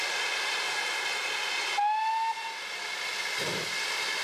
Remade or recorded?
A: recorded